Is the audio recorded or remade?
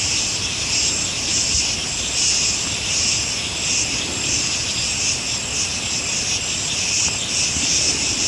recorded